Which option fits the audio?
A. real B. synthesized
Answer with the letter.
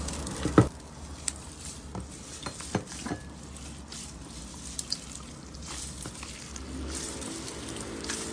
A